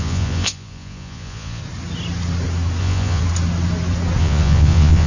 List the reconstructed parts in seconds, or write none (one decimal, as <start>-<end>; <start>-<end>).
0.0-1.6; 2.8-3.2; 4.2-5.1